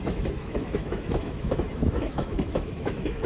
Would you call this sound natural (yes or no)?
no